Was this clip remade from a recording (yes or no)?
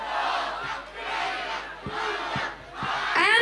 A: no